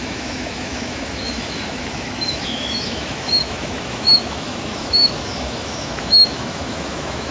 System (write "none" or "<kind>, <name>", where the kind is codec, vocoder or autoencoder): autoencoder, DAC-VAE